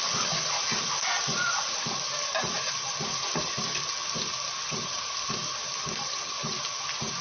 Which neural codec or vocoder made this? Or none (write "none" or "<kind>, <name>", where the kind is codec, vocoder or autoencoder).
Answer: none